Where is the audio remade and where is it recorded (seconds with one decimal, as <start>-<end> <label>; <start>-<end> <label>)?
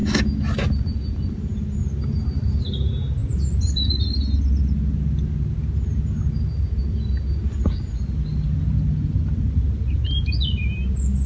0.0-11.3 recorded